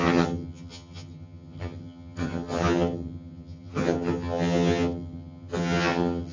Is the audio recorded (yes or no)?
no